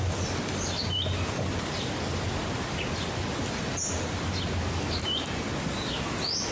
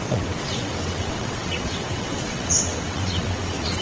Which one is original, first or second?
first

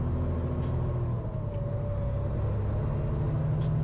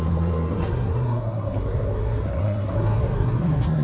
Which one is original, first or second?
first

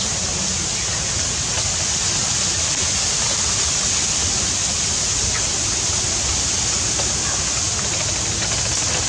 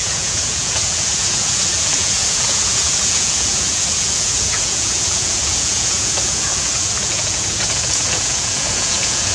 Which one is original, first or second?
first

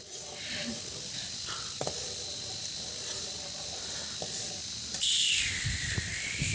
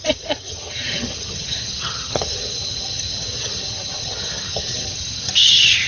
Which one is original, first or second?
first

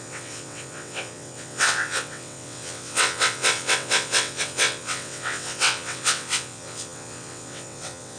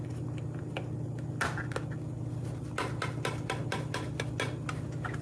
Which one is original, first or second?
second